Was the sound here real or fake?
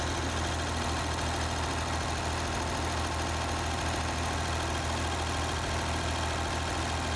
real